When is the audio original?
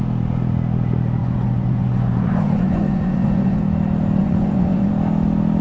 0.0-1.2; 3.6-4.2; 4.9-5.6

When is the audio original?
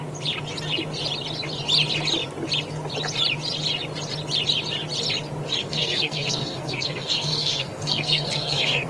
0.0-5.6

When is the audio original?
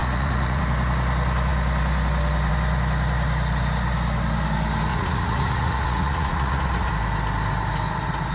0.6-4.9; 6.9-8.3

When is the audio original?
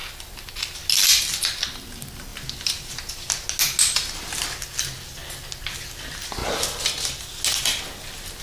0.0-8.4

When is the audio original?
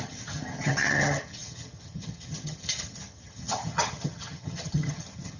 none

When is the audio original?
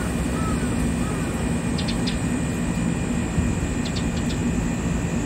0.0-5.3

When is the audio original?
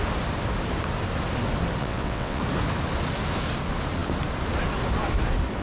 0.0-1.8; 2.4-5.6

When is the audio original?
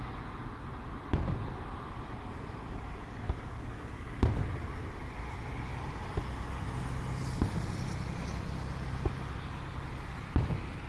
0.0-2.6; 4.2-10.9